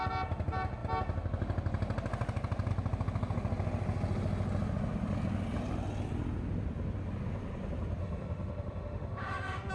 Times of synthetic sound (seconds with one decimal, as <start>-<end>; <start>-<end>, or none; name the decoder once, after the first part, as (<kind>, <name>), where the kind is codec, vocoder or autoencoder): 8.0-9.7 (autoencoder, DAC-VAE)